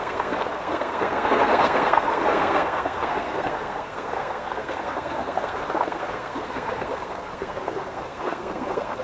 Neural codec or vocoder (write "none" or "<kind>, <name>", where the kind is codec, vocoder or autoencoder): codec, SNAC